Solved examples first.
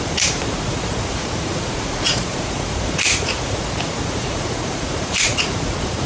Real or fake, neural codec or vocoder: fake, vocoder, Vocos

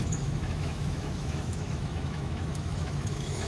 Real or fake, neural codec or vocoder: fake, autoencoder, DAC-VAE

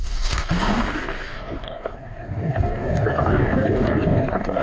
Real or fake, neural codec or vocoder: fake, codec, DAC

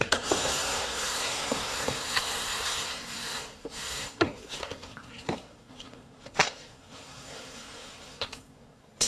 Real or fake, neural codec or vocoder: fake, codec, SNAC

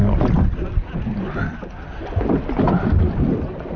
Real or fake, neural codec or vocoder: real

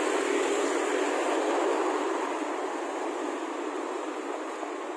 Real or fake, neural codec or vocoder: real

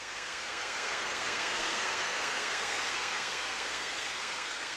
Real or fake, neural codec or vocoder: fake, codec, SNAC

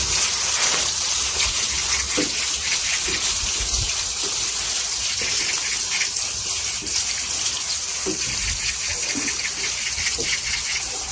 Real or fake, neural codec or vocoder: real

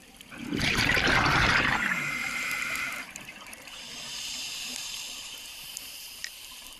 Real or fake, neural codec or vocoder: fake, vocoder, BigVGAN v2